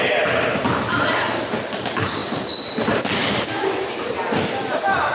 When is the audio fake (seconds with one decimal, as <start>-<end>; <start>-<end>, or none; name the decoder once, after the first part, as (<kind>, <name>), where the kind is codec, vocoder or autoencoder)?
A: none

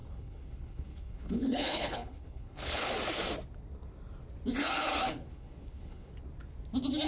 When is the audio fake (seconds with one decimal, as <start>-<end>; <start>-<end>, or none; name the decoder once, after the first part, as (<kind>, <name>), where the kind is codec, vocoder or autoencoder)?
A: 0.0-2.9 (codec, HILCodec); 5.3-6.1

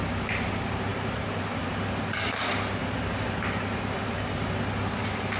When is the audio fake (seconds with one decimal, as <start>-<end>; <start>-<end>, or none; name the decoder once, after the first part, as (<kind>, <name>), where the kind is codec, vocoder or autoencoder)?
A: 0.9-1.7 (vocoder, BigVGAN v2); 2.8-4.6

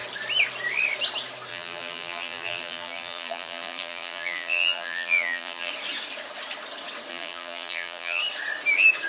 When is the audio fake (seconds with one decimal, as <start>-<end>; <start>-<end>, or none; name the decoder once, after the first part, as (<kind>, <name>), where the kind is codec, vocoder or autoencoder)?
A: 1.5-5.7 (vocoder, BigVGAN v2); 7.1-8.2

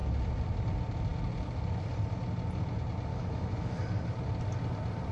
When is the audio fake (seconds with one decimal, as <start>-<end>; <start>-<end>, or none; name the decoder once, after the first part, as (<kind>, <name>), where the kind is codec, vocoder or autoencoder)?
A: 3.1-3.8 (autoencoder, DAC-VAE)

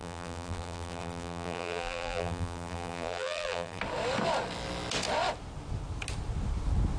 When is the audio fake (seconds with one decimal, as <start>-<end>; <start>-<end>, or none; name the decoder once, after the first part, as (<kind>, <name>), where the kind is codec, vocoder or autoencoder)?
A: 0.0-3.8 (vocoder, BigVGAN v2)

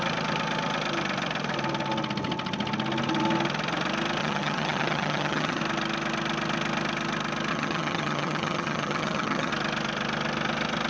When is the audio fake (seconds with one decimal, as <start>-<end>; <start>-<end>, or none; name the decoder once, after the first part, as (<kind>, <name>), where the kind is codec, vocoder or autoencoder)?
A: 4.2-5.6 (vocoder, HiFi-GAN); 7.5-9.5

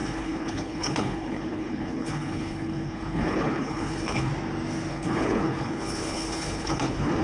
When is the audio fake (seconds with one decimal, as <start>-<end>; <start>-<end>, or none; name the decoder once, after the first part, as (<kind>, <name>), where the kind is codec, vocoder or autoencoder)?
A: 0.0-4.3 (codec, HILCodec); 4.9-7.2